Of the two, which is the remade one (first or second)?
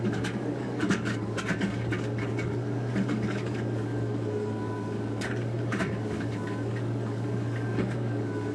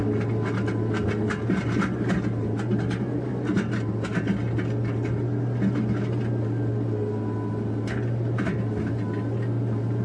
first